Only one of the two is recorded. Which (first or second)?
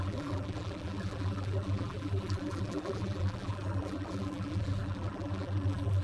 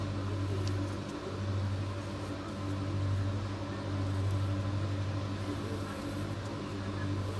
second